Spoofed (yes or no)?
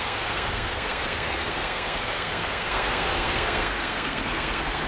yes